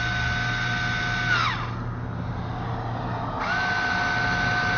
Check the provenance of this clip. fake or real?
real